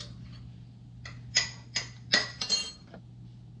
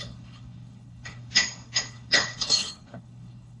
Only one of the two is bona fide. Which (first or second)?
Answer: first